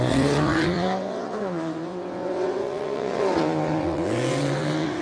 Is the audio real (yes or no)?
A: no